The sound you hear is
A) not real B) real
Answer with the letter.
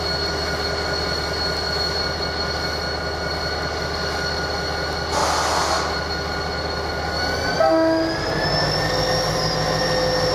B